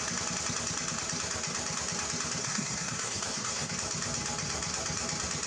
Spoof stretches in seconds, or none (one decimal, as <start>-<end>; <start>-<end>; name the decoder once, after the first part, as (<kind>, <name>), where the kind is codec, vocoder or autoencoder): 2.4-3.7 (codec, SNAC)